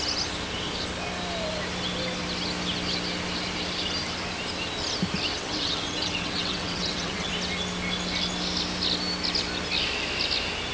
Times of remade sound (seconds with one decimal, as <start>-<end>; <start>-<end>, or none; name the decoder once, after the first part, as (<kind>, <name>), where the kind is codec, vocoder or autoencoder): 5.3-7.3 (vocoder, WaveNeXt)